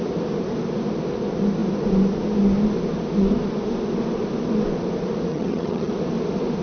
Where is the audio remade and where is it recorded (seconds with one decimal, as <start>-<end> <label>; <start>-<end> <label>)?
0.0-5.3 recorded; 5.3-5.9 remade; 5.9-6.6 recorded